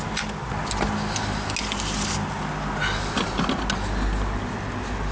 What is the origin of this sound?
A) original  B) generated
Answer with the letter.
A